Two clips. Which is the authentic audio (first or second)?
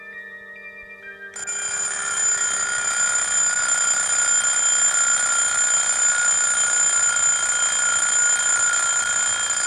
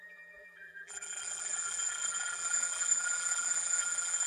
first